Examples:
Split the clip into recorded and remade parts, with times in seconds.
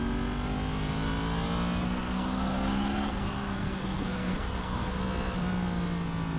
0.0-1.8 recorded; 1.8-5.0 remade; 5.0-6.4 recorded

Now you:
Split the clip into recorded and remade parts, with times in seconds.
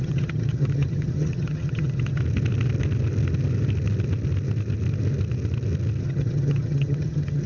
0.0-2.2 remade; 2.2-6.0 recorded; 6.0-7.5 remade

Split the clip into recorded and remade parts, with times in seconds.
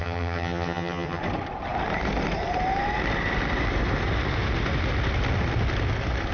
0.0-1.2 remade; 1.2-6.3 recorded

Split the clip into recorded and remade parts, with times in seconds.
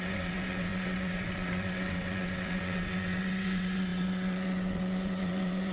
0.0-5.7 remade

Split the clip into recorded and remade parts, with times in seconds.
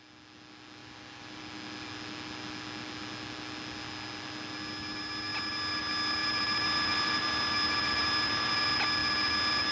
0.0-0.8 recorded; 0.8-1.4 remade; 1.4-6.2 recorded; 6.2-8.5 remade; 8.5-9.7 recorded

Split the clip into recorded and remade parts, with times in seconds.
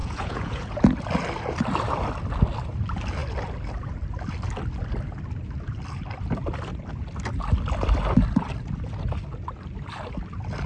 0.0-0.8 remade; 0.8-10.7 recorded